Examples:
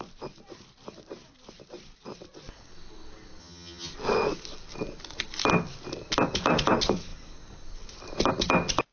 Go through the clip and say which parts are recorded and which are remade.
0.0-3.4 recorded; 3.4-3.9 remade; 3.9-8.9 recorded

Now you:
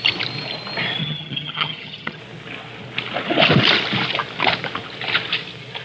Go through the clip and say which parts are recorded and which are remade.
0.0-1.0 recorded; 1.0-2.2 remade; 2.2-5.8 recorded

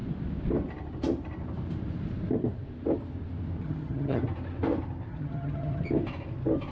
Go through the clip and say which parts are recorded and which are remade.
0.0-3.6 recorded; 3.6-4.2 remade; 4.2-5.1 recorded; 5.1-5.8 remade; 5.8-6.7 recorded

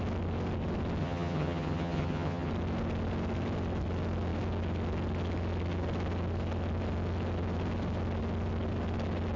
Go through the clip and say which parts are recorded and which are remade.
0.0-1.0 recorded; 1.0-2.5 remade; 2.5-9.4 recorded

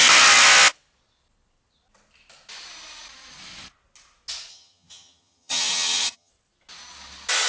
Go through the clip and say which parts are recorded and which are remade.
0.0-4.5 recorded; 4.5-6.3 remade; 6.3-7.5 recorded

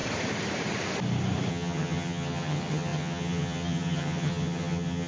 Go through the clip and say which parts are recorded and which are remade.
0.0-1.5 recorded; 1.5-5.1 remade

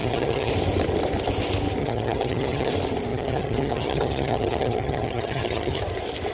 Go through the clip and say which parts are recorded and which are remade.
0.0-0.5 remade; 0.5-1.8 recorded; 1.8-2.7 remade; 2.7-3.1 recorded; 3.1-5.8 remade; 5.8-6.3 recorded

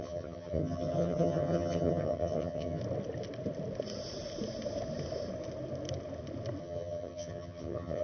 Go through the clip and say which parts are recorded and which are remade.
0.0-2.8 remade; 2.8-6.6 recorded; 6.6-8.0 remade